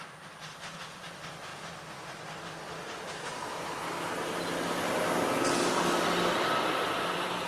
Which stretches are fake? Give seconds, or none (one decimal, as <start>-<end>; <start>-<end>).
none